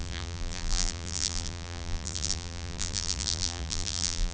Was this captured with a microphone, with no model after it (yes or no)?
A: no